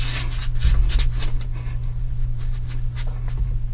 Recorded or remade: recorded